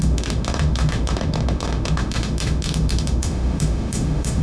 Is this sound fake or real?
fake